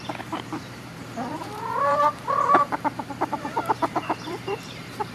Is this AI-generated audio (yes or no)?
yes